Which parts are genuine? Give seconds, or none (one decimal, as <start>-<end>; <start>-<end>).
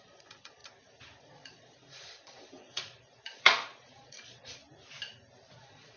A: 0.6-1.2; 4.6-5.6